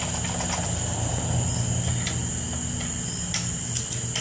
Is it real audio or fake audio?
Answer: real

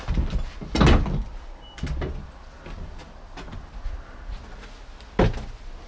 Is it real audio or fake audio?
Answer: real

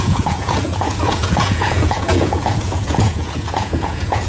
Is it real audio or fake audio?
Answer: fake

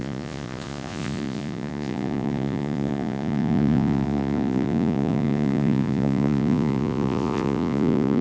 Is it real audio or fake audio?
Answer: fake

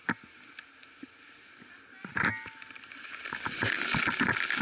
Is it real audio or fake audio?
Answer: real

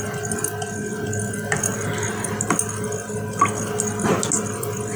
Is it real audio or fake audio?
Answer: real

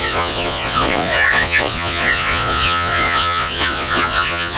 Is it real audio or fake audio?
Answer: fake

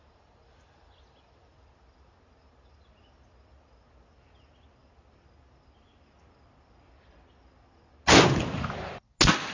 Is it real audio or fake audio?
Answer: real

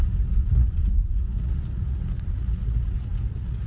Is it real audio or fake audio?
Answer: fake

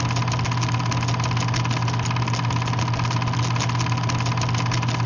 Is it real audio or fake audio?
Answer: real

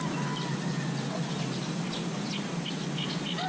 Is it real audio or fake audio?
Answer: real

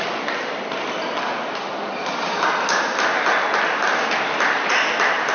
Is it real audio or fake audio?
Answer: real